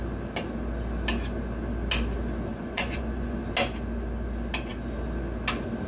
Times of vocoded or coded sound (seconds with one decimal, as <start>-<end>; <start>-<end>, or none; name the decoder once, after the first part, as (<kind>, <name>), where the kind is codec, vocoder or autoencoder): 2.5-3.4 (vocoder, Vocos)